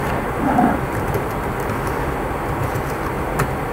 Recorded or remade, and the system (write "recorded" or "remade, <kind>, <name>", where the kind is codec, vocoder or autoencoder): recorded